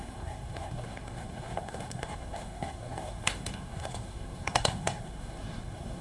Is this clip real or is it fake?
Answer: fake